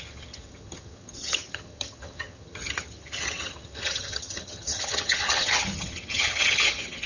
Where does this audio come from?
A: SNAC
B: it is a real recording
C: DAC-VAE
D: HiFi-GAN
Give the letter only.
D